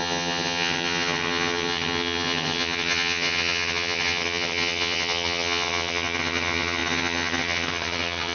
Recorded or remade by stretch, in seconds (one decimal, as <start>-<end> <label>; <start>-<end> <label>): 0.0-8.3 remade

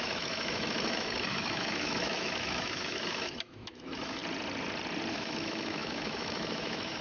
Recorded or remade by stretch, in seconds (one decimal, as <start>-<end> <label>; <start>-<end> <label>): 0.0-4.2 remade; 4.2-5.1 recorded; 5.1-7.0 remade

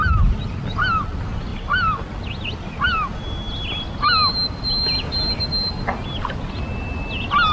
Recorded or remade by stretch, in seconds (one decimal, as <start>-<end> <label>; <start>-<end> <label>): 0.0-7.5 recorded

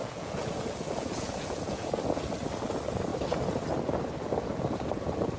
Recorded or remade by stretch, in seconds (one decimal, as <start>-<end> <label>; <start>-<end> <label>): 0.0-2.3 remade; 2.3-5.4 recorded

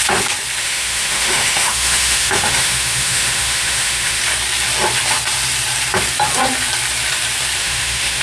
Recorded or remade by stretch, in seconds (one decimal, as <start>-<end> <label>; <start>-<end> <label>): 0.0-0.6 recorded; 0.6-4.2 remade; 4.2-7.6 recorded; 7.6-8.2 remade

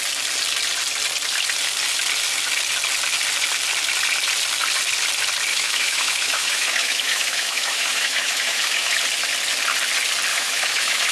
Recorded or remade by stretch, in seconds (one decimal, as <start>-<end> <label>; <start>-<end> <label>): 0.0-5.5 recorded; 5.5-9.0 remade; 9.0-10.3 recorded; 10.3-11.1 remade